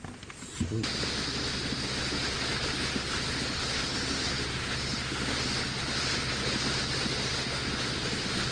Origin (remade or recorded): recorded